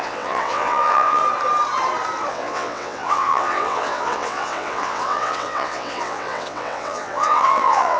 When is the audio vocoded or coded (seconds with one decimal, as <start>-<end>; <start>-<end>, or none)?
0.0-1.2; 2.3-8.0